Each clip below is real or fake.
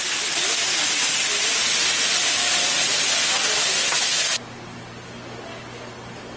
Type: real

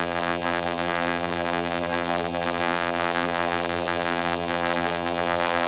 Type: fake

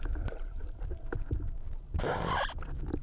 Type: fake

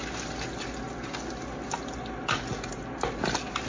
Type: real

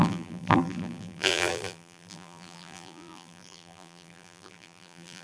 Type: fake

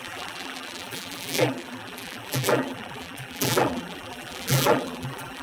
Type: fake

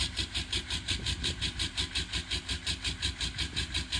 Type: fake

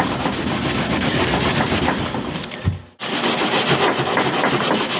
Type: real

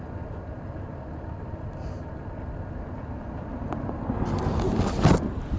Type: real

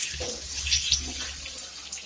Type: real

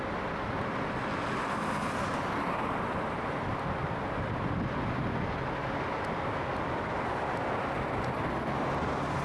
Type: real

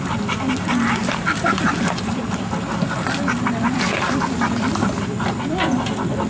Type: fake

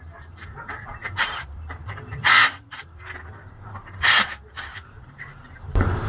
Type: fake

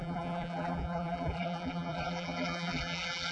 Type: fake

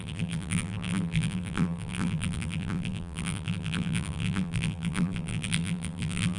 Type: fake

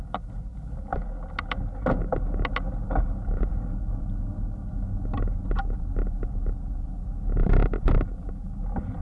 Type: real